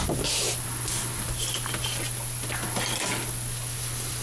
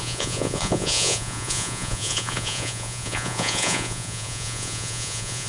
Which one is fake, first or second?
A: second